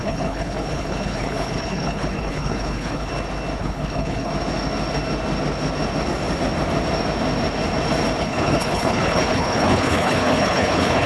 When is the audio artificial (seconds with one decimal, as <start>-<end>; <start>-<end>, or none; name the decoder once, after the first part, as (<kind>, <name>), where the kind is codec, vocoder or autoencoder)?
0.0-3.1 (codec, HILCodec); 3.6-4.3; 8.2-11.1